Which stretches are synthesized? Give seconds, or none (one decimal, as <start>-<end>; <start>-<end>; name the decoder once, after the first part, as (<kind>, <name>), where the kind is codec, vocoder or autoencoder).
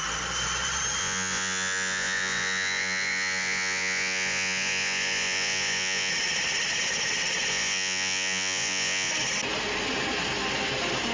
1.0-6.1 (vocoder, Vocos); 7.5-9.1